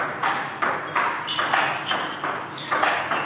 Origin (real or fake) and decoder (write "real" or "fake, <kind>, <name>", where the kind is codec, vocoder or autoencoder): real